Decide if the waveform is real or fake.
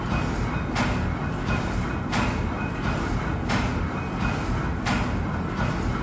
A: real